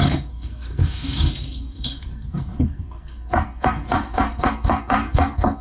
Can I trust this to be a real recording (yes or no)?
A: no